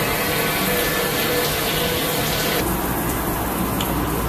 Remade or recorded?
recorded